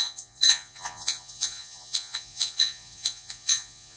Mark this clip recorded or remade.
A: remade